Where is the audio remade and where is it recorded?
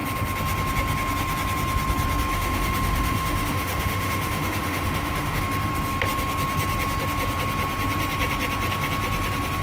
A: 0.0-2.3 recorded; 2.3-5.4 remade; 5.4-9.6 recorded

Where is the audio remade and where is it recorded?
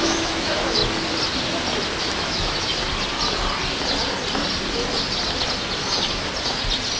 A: 0.0-0.8 remade; 0.8-2.0 recorded; 2.0-2.7 remade; 2.7-7.0 recorded